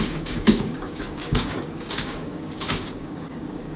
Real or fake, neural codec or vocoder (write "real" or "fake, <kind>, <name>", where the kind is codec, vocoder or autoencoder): fake, codec, DAC